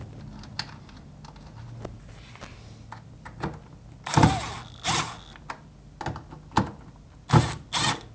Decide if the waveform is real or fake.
real